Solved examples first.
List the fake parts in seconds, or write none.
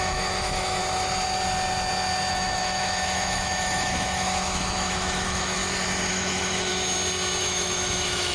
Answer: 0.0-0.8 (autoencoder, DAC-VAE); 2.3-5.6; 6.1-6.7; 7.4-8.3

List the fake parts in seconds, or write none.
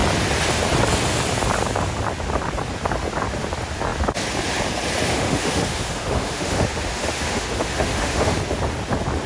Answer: 5.1-8.4 (autoencoder, DAC-VAE)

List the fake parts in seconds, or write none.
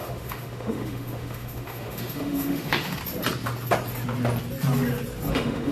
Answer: 0.0-3.0 (autoencoder, DAC-VAE); 5.3-5.7